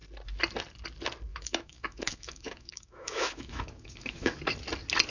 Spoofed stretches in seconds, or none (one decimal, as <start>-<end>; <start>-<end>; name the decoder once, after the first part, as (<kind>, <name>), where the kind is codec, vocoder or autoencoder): 1.3-4.4 (autoencoder, DAC-VAE)